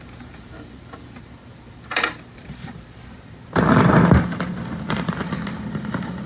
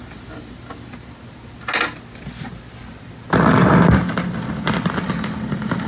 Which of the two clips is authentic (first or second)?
second